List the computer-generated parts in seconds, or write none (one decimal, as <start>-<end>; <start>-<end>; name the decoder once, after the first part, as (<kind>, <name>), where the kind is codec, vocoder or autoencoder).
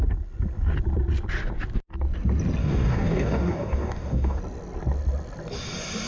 2.6-4.4 (codec, DAC)